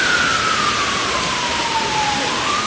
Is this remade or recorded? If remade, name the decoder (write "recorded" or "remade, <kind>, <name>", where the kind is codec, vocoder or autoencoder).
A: recorded